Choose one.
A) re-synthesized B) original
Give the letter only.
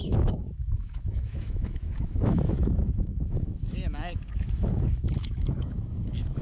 A